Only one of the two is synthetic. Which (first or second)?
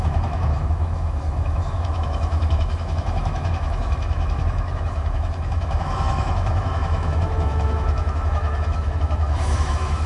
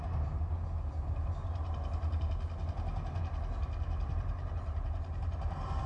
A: first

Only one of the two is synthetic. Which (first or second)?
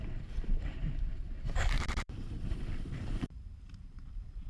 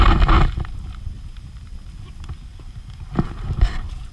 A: first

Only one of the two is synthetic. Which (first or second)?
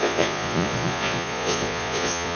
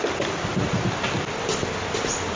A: first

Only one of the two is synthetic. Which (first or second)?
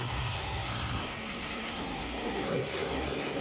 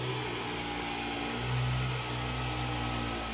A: first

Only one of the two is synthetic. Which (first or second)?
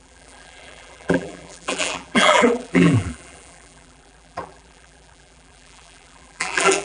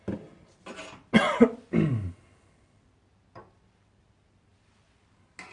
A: first